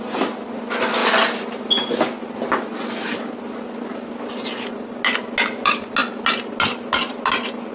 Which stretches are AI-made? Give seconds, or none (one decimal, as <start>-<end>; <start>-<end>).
none